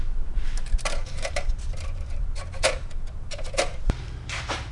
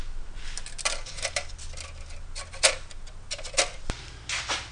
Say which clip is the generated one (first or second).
first